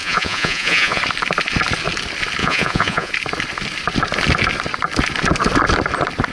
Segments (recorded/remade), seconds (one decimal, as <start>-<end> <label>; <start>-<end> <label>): 0.0-1.0 remade; 1.0-2.4 recorded; 2.4-3.1 remade; 3.1-6.3 recorded